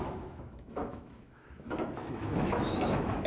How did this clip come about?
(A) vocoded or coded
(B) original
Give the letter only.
A